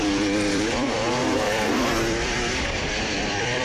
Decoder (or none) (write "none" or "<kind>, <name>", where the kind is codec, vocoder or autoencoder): vocoder, BigVGAN v2